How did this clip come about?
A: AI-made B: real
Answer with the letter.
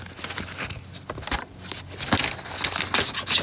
B